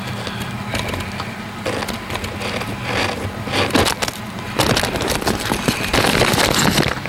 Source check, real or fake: real